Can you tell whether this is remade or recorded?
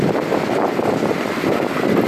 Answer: recorded